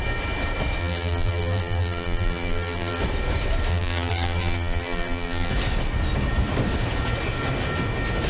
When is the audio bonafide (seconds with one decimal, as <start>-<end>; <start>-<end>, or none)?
0.0-0.8; 3.0-3.7; 5.5-8.3